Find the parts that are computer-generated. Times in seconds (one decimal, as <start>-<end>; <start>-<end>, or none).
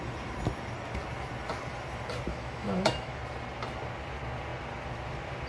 2.3-3.2